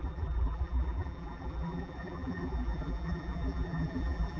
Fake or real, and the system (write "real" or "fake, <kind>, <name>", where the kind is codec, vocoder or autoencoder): fake, vocoder, BigVGAN v2